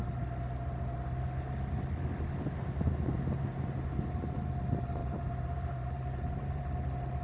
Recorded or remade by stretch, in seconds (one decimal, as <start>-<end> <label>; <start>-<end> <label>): 0.0-5.0 recorded; 5.0-6.6 remade; 6.6-7.2 recorded